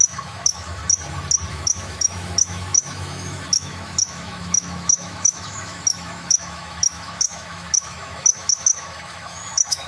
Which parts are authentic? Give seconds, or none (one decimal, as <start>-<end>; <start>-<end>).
0.8-1.5